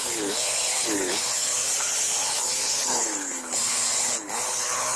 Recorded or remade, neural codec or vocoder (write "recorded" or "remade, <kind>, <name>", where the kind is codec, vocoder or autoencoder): remade, codec, HILCodec